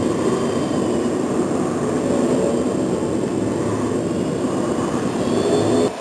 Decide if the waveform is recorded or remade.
recorded